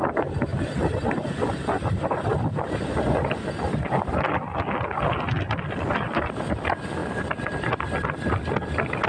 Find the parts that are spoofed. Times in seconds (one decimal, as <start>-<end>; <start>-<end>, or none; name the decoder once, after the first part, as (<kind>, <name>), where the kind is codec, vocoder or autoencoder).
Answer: none